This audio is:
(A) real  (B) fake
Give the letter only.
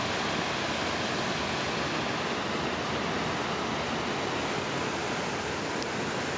A